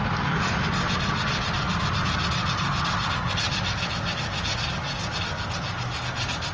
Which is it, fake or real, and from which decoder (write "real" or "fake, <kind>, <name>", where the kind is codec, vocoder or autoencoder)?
real